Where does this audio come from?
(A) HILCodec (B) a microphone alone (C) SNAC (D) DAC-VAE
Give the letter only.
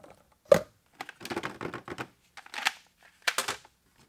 B